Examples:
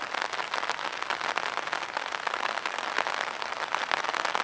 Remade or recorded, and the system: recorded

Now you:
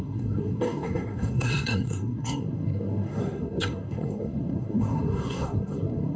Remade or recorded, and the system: remade, codec, SNAC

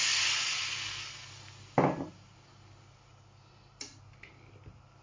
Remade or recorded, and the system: recorded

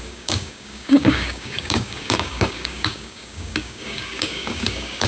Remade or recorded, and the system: remade, codec, DAC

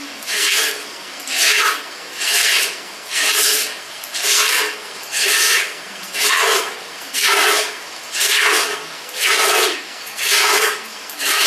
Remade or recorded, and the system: remade, codec, SNAC